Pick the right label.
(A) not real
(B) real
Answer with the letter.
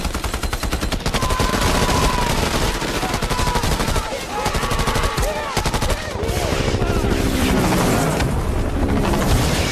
B